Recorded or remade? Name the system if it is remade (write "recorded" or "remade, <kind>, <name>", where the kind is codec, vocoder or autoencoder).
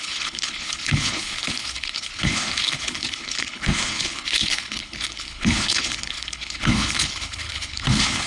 remade, codec, HILCodec